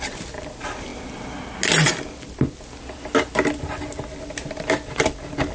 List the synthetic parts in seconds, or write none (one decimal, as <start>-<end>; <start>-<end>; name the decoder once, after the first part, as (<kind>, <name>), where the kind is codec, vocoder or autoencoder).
0.0-0.9 (vocoder, BigVGAN v2); 4.2-5.5

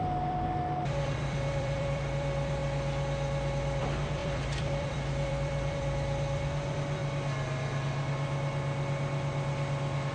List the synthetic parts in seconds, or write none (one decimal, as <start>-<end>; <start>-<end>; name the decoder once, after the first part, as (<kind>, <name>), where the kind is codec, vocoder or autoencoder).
0.0-2.6 (vocoder, BigVGAN v2); 3.6-7.0